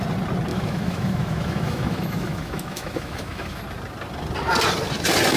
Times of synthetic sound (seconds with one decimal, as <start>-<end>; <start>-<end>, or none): 0.5-3.6